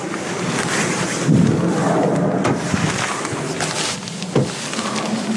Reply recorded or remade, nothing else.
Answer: recorded